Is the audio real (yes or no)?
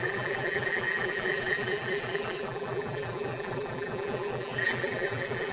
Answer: no